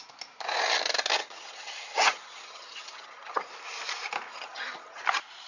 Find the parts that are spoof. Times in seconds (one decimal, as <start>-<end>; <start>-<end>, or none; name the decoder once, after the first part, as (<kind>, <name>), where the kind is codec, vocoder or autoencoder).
1.2-3.5 (vocoder, HiFi-GAN); 4.3-5.0